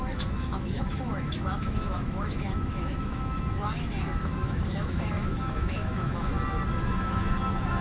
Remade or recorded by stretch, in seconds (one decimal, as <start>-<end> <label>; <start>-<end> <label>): 0.0-6.3 remade; 6.3-6.9 recorded; 6.9-7.8 remade